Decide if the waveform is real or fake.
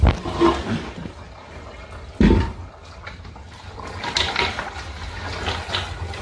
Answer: real